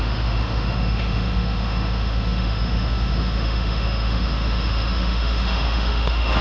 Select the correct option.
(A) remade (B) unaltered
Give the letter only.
A